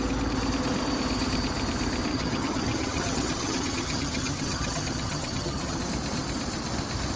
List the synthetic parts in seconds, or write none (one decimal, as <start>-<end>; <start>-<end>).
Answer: 2.1-5.8